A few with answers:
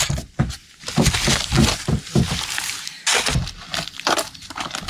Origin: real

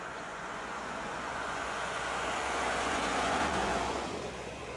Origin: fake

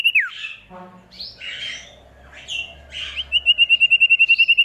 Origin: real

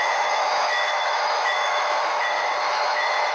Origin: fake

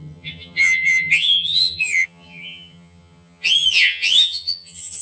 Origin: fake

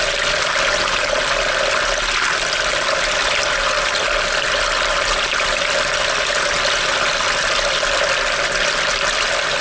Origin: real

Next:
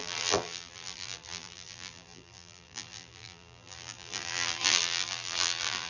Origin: fake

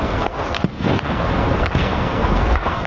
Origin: fake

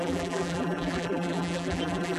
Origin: fake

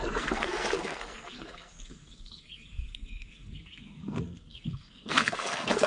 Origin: fake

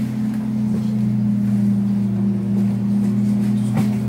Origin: real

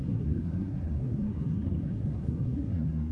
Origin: fake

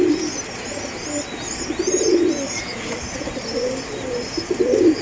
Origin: real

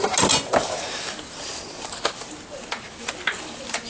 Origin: real